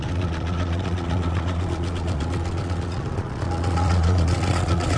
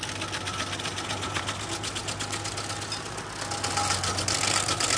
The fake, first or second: first